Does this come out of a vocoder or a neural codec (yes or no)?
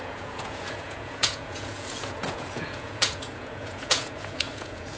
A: yes